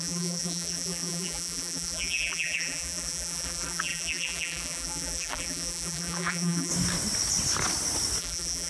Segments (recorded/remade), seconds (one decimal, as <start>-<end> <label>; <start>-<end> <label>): 0.0-6.7 remade; 6.7-8.2 recorded; 8.2-8.7 remade